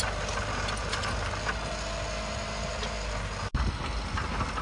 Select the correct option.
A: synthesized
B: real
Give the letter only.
B